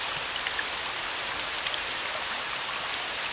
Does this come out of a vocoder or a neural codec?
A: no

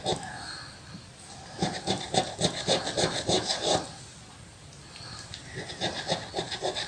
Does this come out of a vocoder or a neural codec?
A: no